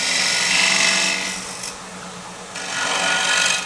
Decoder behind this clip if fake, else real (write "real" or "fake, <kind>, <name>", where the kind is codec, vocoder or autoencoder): real